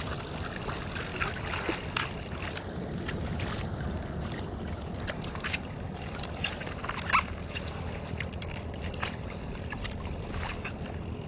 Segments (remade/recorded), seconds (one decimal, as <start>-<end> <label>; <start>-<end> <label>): 0.0-11.3 recorded